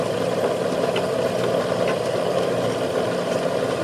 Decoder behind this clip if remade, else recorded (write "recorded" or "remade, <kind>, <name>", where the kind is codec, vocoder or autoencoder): recorded